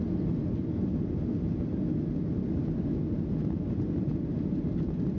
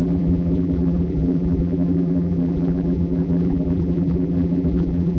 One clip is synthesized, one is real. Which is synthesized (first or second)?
second